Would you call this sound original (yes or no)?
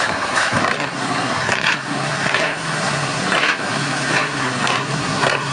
no